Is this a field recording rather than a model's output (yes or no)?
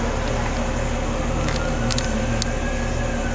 yes